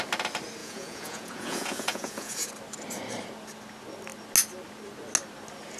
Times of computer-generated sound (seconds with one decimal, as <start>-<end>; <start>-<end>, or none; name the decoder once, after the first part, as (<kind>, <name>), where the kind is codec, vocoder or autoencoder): 0.6-2.5 (vocoder, Vocos)